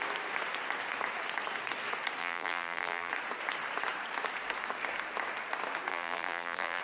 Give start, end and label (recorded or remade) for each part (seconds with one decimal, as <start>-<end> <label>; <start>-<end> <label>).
0.0-2.2 recorded; 2.2-3.1 remade; 3.1-5.9 recorded; 5.9-6.8 remade